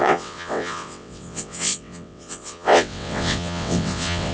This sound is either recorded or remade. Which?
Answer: remade